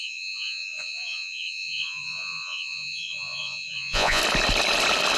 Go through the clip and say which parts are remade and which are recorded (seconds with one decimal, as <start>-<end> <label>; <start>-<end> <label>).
0.0-4.2 remade; 4.2-5.2 recorded